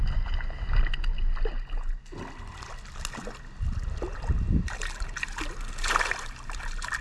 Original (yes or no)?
yes